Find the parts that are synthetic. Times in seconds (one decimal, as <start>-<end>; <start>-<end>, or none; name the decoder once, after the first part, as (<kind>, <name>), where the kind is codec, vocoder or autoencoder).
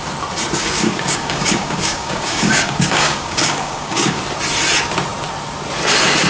0.6-4.2 (codec, DAC)